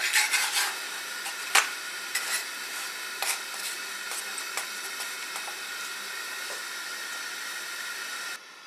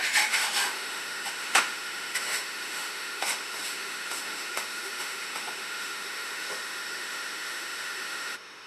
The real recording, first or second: first